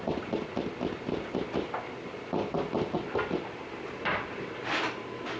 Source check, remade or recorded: recorded